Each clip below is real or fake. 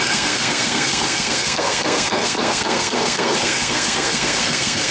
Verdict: fake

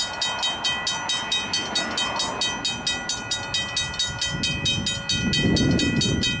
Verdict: real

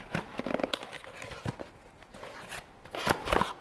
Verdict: real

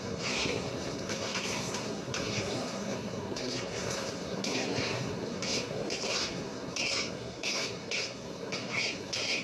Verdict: fake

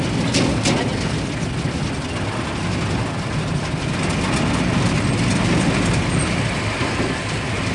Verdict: real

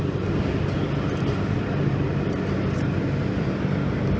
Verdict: real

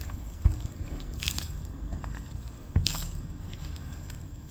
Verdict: fake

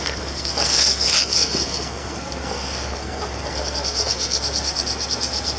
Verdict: fake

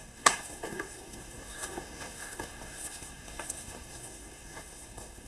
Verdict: fake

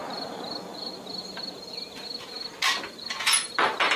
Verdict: real